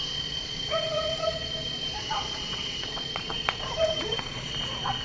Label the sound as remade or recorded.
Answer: remade